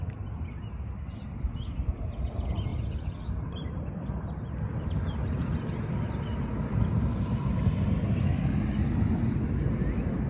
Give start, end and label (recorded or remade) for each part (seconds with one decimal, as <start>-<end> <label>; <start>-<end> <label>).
0.0-2.7 recorded; 2.7-7.0 remade; 7.0-10.3 recorded